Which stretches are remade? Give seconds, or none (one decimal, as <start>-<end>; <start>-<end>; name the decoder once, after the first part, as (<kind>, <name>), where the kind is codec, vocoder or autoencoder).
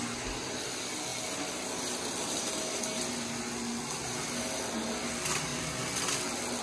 none